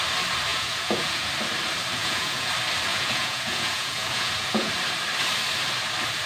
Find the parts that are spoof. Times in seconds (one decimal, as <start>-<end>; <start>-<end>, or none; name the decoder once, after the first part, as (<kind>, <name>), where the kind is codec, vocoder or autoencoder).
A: 0.5-1.3 (vocoder, Vocos); 2.0-2.5; 2.9-4.7